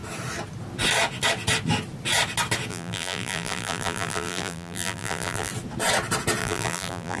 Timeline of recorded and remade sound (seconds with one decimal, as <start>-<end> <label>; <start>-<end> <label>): 0.0-2.7 recorded; 2.7-5.5 remade; 5.5-6.4 recorded; 6.4-7.2 remade